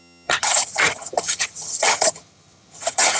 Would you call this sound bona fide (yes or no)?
no